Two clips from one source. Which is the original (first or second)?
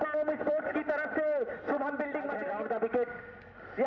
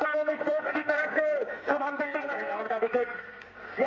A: first